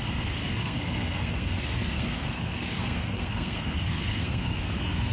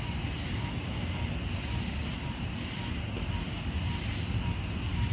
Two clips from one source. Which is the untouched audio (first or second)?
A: second